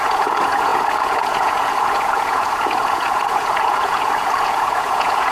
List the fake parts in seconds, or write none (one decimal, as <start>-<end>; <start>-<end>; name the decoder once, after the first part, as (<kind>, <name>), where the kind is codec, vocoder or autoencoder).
0.0-5.3 (vocoder, Vocos)